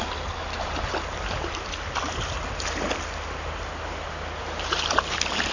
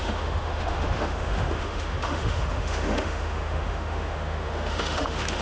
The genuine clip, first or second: first